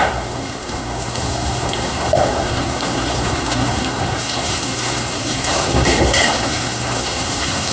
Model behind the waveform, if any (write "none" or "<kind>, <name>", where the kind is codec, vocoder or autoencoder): codec, SNAC